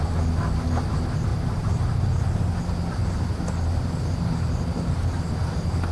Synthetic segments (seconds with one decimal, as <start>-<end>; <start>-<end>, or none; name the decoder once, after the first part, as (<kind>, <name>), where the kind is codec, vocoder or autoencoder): 1.3-2.6 (vocoder, BigVGAN v2); 3.0-4.5